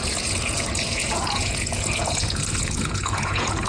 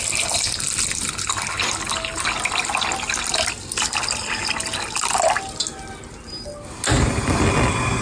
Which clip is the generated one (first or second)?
first